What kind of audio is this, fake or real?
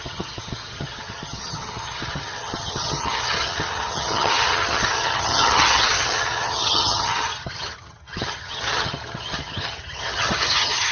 fake